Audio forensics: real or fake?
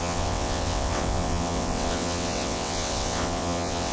fake